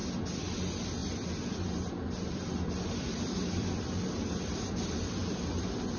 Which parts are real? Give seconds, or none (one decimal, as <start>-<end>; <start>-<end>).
0.6-1.0; 4.6-5.2